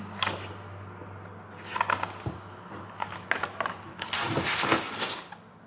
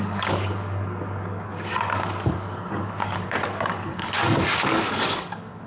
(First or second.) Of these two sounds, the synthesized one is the second